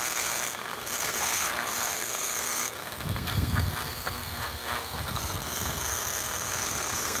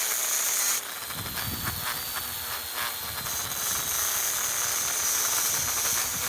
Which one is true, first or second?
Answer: second